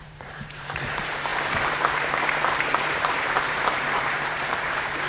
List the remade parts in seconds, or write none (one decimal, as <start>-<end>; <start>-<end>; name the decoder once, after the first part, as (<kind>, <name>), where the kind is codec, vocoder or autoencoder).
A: 0.0-5.1 (vocoder, BigVGAN v2)